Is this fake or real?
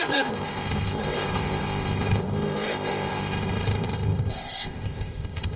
fake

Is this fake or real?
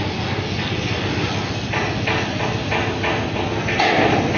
real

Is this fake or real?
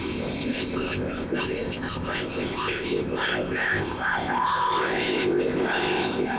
fake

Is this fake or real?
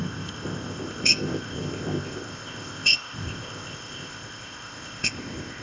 fake